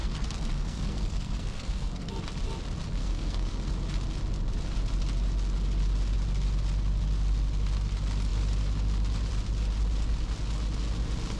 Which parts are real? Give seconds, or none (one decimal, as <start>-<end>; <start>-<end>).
2.1-3.0; 3.7-11.4